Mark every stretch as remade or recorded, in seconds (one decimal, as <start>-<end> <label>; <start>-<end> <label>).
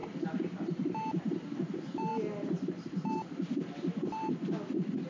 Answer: 0.0-1.7 recorded; 1.7-2.1 remade; 2.1-2.7 recorded; 2.7-5.1 remade